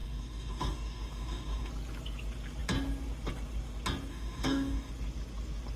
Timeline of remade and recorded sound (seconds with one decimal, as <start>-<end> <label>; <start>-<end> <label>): 0.0-1.7 remade; 1.7-4.1 recorded; 4.1-4.9 remade; 4.9-5.8 recorded